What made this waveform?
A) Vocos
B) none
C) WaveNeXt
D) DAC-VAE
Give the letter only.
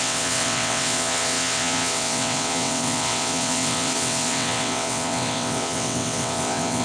C